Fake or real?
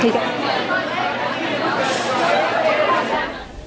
real